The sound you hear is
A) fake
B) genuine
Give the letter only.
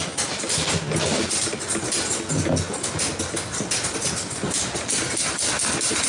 B